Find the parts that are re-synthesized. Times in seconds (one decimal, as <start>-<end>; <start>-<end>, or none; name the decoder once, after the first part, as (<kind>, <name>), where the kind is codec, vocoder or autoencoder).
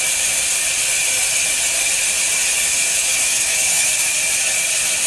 2.9-3.9 (autoencoder, DAC-VAE)